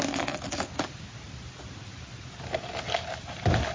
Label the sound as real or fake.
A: real